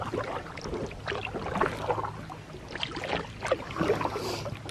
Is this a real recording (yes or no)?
yes